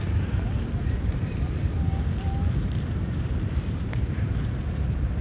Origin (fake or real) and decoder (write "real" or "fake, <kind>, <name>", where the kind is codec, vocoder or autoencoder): fake, vocoder, BigVGAN v2